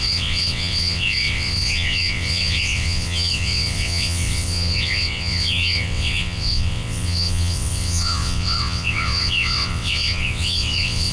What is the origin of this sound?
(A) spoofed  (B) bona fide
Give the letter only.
A